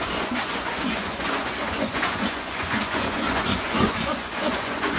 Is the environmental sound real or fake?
fake